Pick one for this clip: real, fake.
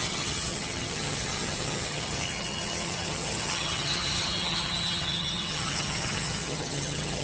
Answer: fake